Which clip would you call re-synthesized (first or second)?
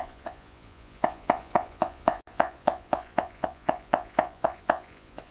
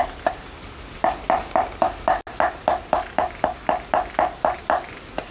first